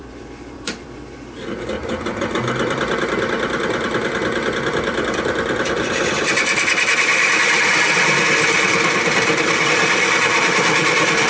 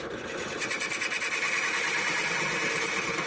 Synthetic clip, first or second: first